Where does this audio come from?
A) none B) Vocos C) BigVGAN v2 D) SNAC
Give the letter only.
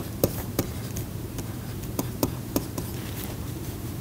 C